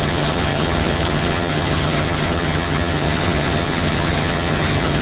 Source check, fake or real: fake